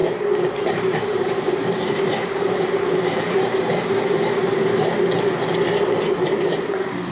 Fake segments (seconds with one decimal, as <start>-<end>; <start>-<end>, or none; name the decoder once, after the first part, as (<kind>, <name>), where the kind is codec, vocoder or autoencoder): 0.6-4.6 (vocoder, BigVGAN v2); 5.9-7.1